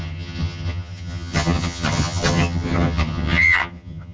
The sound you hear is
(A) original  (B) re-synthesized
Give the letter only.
B